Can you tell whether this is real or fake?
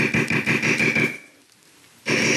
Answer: fake